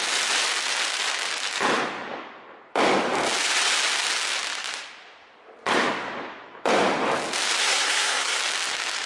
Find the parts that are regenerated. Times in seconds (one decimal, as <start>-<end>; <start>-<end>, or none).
7.6-8.4